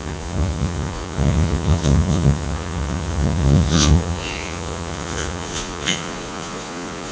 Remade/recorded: remade